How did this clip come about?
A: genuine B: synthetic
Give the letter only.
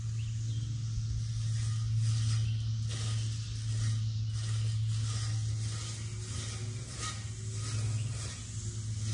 A